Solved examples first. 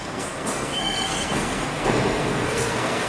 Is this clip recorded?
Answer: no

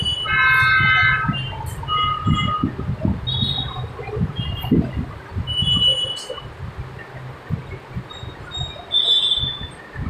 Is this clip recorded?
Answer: yes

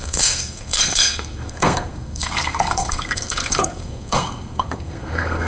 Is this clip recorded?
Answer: no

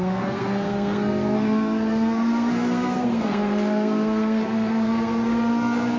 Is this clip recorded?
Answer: no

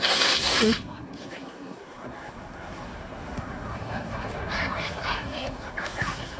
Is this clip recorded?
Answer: no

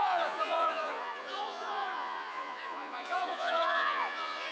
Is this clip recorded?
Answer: no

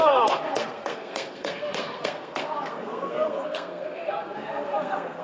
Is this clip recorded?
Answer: no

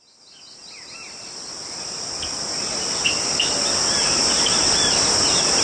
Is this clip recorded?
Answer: yes